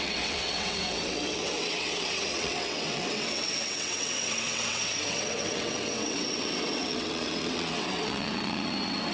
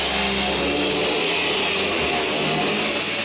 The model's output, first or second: first